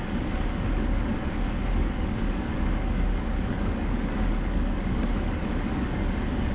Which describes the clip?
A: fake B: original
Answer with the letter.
A